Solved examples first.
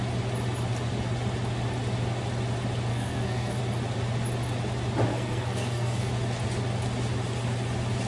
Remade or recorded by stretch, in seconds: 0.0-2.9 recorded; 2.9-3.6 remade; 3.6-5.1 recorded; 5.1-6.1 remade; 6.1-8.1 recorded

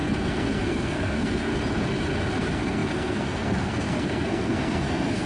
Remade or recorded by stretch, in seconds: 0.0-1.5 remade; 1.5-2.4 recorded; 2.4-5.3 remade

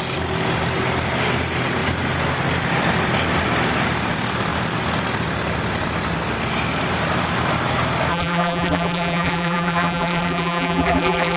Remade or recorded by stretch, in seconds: 0.0-8.1 recorded; 8.1-11.4 remade

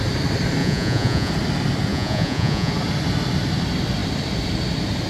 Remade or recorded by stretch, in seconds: 0.0-0.6 recorded; 0.6-1.3 remade; 1.3-1.9 recorded; 1.9-2.7 remade; 2.7-5.1 recorded